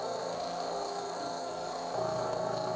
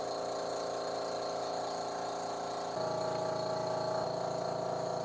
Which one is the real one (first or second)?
second